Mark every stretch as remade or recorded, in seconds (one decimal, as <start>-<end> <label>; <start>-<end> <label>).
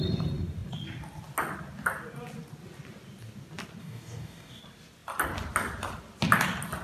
0.0-3.8 recorded; 3.8-4.6 remade; 4.6-6.8 recorded